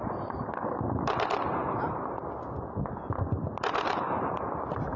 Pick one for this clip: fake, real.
real